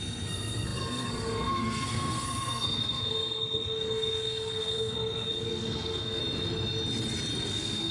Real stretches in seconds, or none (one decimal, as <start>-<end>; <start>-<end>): 6.2-7.5